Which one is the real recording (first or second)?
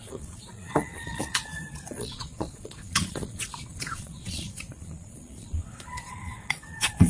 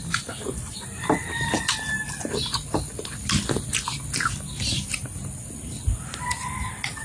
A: second